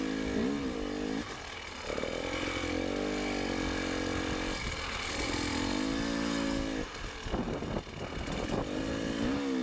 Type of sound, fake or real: real